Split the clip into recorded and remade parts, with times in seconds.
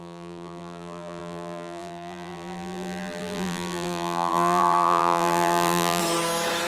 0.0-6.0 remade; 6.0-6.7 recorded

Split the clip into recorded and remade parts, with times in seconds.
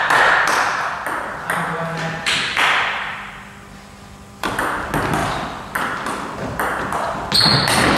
0.0-2.2 recorded; 2.2-3.3 remade; 3.3-5.2 recorded; 5.2-5.8 remade; 5.8-8.0 recorded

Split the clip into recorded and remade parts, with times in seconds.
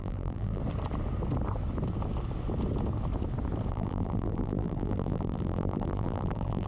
0.0-0.6 remade; 0.6-3.7 recorded; 3.7-6.7 remade